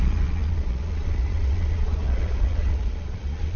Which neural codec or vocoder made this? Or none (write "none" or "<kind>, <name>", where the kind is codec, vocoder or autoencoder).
vocoder, Vocos